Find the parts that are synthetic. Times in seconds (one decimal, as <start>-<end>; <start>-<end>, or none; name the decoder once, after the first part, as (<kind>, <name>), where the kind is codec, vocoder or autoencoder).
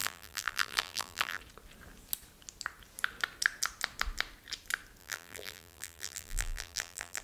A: 0.0-1.4 (vocoder, BigVGAN v2); 5.0-7.2